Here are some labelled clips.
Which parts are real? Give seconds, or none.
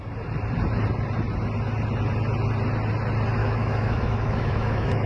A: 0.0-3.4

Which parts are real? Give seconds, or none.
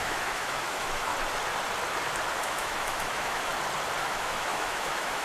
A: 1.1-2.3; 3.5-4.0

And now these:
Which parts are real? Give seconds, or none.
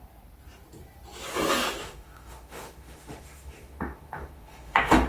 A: 0.0-1.8